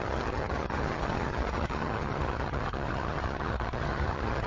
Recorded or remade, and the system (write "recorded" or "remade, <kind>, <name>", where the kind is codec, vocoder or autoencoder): remade, vocoder, HiFi-GAN